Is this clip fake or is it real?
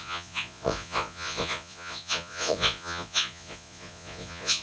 fake